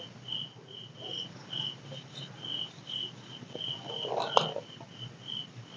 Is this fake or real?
real